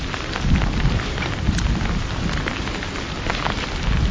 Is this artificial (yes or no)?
no